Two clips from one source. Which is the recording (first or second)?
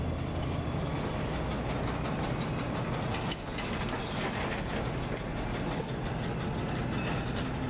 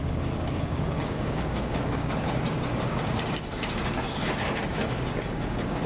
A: first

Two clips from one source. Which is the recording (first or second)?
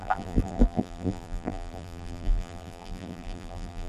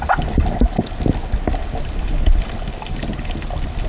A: second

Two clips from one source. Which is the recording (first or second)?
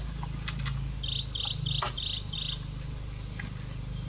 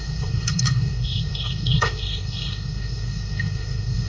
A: first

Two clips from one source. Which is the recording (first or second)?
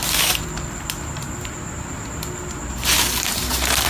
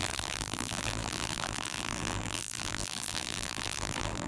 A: first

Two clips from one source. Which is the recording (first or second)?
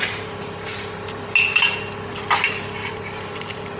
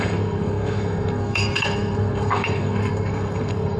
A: first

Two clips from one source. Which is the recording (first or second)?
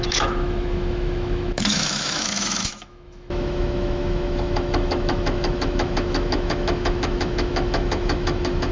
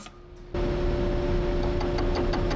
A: second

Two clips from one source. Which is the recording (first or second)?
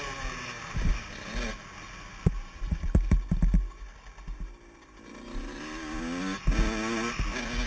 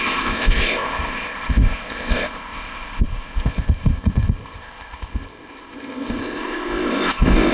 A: first